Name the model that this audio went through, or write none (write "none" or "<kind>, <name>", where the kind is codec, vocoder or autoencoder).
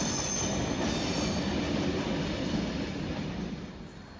none